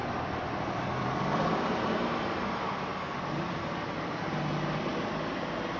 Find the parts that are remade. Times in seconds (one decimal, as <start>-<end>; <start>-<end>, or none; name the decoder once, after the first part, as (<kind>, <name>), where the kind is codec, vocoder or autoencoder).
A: 0.0-2.9 (vocoder, BigVGAN v2); 3.9-4.9